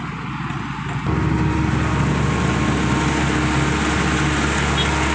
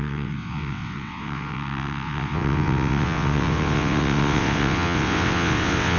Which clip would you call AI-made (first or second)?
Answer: second